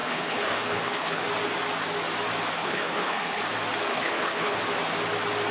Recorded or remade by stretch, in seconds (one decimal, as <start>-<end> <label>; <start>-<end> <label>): 0.0-1.2 remade; 1.2-2.6 recorded; 2.6-3.4 remade; 3.4-3.9 recorded; 3.9-4.6 remade; 4.6-5.5 recorded